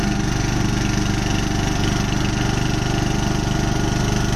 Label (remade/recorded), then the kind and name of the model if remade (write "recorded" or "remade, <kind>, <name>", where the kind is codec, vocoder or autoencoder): recorded